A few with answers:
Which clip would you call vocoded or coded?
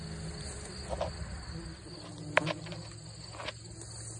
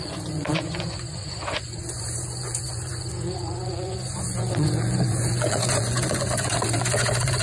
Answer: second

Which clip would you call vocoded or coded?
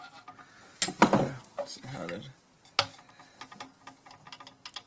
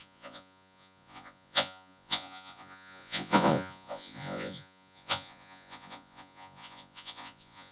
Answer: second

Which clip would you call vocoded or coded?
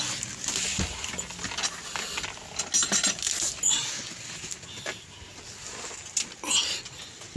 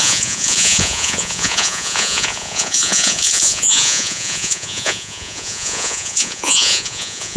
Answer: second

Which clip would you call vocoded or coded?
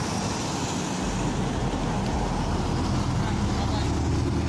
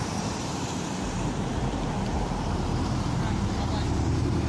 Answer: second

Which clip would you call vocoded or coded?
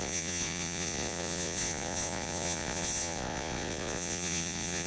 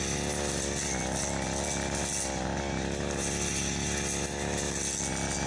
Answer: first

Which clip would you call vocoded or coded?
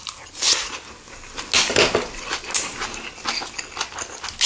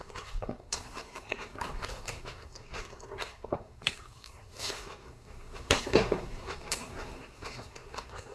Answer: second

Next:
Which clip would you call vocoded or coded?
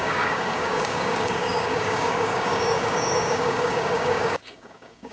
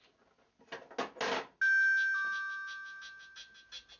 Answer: first